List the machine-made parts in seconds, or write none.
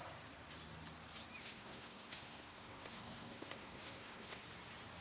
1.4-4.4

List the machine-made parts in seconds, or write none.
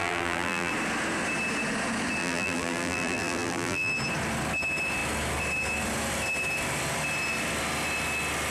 0.0-0.7; 2.2-3.9